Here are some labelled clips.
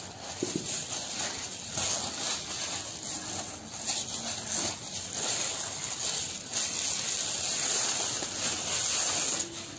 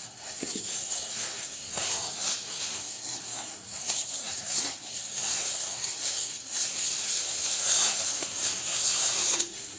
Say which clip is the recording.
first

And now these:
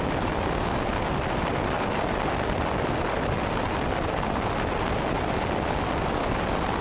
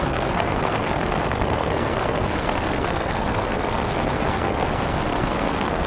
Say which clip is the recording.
first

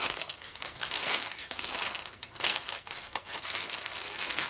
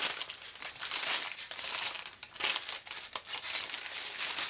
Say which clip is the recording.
second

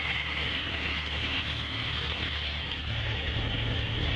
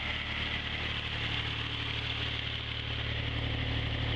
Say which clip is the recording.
second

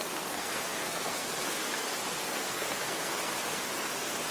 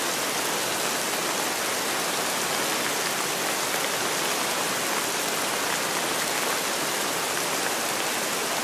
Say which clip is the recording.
second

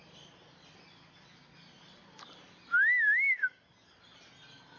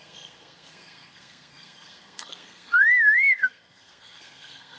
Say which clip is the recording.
first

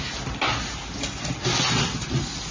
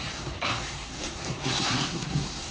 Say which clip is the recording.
first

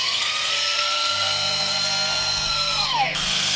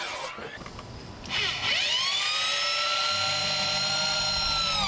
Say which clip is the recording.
second